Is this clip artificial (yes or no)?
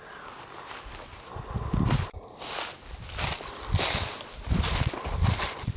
yes